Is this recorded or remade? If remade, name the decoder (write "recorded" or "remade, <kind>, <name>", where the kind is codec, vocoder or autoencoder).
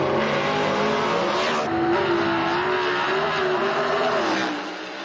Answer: recorded